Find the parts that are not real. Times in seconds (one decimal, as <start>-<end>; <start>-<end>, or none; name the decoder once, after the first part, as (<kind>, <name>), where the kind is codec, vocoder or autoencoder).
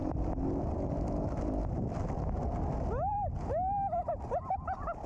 none